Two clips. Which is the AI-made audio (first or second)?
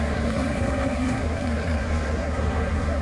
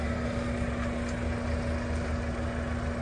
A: first